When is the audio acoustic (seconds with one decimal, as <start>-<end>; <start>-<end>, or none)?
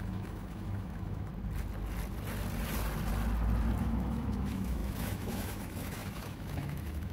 1.3-3.8